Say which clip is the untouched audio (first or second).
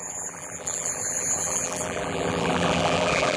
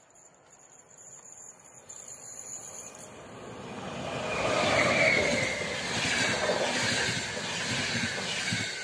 second